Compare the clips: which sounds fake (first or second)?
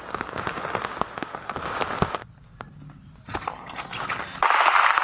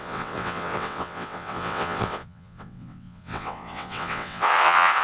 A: second